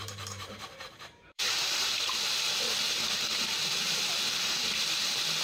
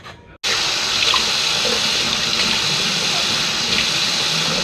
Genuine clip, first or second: second